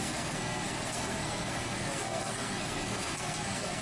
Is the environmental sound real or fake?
fake